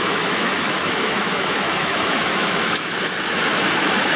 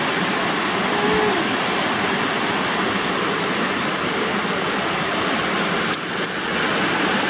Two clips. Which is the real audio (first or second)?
second